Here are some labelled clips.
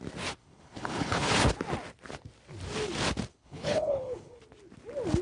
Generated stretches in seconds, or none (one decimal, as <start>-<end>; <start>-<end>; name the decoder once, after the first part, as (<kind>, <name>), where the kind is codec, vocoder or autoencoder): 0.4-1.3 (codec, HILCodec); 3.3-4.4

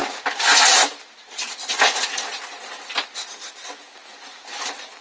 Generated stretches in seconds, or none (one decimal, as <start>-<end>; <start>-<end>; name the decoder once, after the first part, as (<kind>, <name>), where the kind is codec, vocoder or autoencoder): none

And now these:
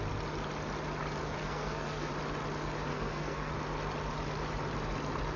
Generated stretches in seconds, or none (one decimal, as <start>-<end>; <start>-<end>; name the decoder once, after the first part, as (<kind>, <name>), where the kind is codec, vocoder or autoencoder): 1.4-2.1 (codec, SNAC); 2.9-3.5